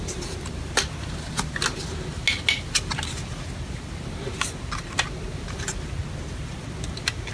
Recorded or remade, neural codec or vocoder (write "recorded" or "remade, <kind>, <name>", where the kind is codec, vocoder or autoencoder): recorded